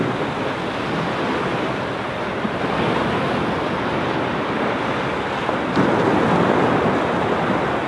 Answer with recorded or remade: recorded